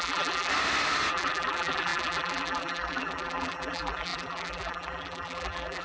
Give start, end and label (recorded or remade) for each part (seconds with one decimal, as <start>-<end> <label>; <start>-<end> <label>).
0.0-0.5 remade; 0.5-1.1 recorded; 1.1-5.8 remade